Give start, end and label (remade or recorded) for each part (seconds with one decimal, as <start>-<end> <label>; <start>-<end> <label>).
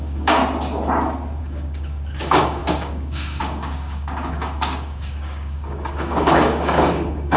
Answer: 0.0-0.4 remade; 0.4-1.4 recorded; 1.4-7.4 remade